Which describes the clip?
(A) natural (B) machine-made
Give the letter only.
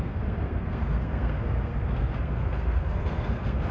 B